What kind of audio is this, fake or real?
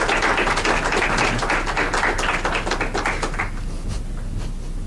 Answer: real